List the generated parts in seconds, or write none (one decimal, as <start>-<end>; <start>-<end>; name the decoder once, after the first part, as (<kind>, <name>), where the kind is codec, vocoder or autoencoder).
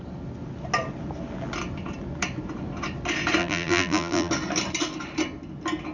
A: 3.4-4.3 (vocoder, BigVGAN v2)